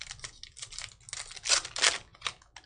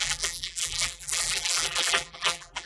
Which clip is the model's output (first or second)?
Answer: second